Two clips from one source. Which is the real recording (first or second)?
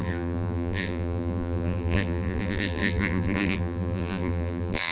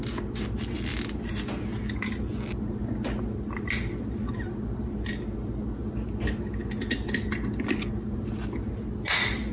second